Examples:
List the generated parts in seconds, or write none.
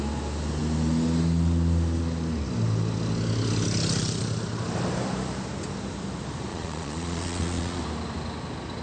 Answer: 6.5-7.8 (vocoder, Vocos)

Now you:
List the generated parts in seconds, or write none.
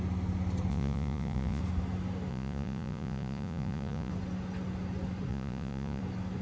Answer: 0.7-1.6 (vocoder, Vocos); 2.3-4.1; 5.3-6.0